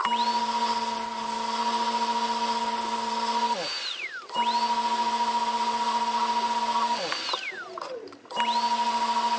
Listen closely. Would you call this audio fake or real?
real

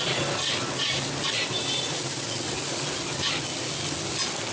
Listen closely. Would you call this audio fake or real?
real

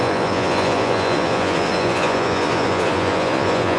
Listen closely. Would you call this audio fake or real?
fake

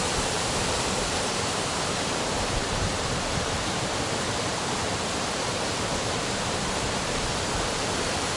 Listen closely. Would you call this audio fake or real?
fake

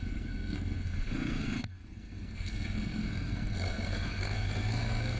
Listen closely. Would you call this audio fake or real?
fake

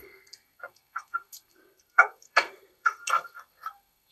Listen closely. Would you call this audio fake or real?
fake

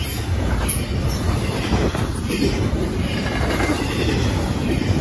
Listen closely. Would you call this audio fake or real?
real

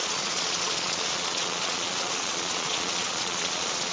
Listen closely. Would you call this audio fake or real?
fake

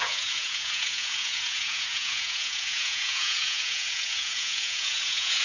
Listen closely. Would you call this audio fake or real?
fake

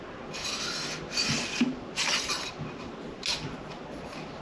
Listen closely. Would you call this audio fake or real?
real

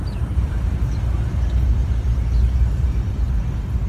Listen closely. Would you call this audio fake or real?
fake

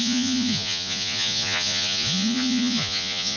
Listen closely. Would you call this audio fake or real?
fake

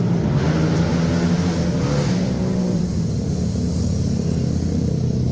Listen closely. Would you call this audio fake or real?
real